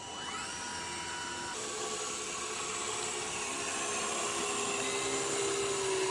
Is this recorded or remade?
recorded